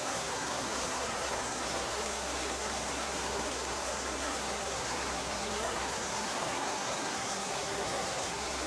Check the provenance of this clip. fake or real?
fake